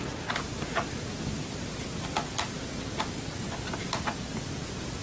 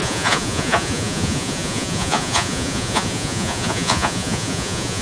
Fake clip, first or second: second